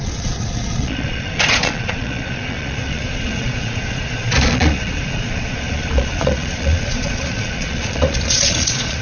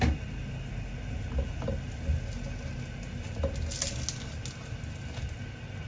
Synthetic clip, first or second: first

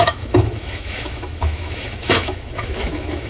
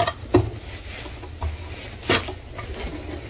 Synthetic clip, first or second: first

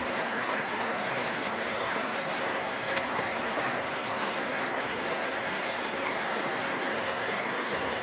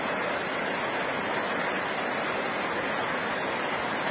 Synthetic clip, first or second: first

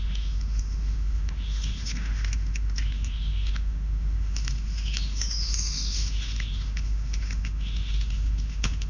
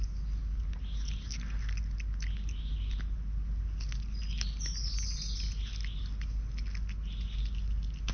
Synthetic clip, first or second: first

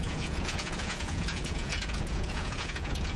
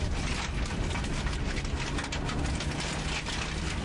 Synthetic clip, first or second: first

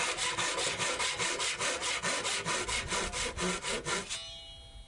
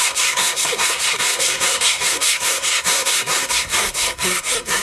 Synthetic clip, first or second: second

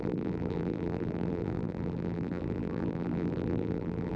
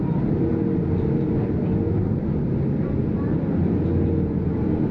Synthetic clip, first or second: first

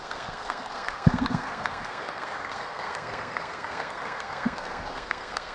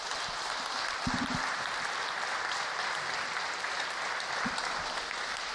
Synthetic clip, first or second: first